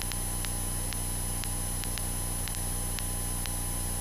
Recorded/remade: recorded